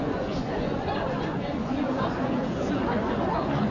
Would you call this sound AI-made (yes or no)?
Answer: yes